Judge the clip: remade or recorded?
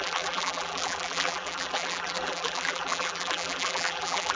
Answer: remade